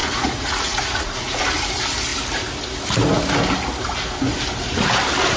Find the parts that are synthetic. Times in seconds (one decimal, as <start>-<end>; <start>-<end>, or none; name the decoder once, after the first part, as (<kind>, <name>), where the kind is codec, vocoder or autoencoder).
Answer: 0.0-1.4 (vocoder, Vocos)

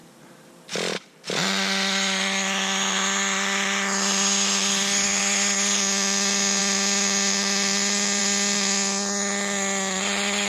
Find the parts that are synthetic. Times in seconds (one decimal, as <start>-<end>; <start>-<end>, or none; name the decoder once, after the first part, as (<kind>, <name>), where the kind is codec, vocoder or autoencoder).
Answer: none

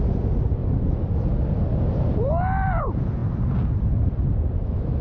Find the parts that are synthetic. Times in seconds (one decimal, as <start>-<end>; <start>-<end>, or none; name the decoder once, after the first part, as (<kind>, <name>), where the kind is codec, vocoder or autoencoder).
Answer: none

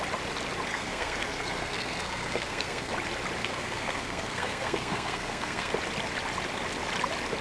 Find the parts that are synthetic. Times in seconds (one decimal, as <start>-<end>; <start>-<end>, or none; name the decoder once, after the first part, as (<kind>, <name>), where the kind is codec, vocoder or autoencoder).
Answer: 0.7-2.9 (codec, SNAC); 3.4-5.7

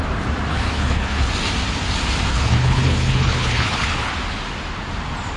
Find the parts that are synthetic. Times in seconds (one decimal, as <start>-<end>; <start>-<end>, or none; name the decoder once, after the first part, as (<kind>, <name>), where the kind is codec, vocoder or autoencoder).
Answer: 0.5-1.3 (codec, HILCodec); 2.3-4.1

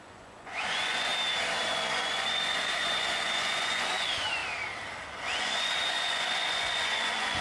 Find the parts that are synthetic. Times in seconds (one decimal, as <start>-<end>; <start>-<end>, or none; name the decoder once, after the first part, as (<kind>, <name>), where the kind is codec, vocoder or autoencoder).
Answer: 0.0-1.1 (vocoder, Vocos); 1.7-4.4; 5.0-7.4

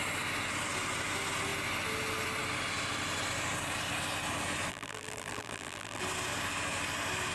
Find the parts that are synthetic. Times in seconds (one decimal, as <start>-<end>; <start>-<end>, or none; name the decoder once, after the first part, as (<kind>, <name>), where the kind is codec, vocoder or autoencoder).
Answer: 4.7-6.0 (vocoder, BigVGAN v2)

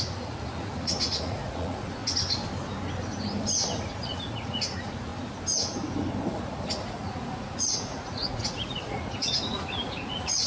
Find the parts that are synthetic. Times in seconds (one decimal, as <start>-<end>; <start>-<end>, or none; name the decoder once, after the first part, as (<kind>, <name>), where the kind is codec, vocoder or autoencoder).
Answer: 0.0-2.0 (vocoder, Vocos); 3.8-5.1; 6.3-10.5